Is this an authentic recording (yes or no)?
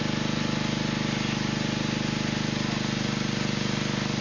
yes